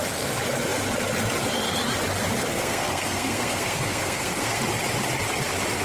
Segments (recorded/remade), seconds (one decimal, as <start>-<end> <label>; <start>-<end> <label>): 0.0-2.5 recorded; 2.5-4.6 remade; 4.6-5.8 recorded